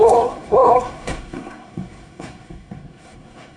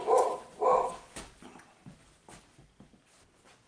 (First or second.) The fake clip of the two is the first